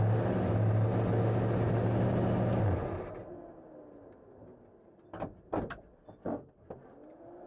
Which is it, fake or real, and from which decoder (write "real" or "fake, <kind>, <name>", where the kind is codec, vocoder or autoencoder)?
real